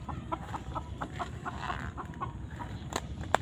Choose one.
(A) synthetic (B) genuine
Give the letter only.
A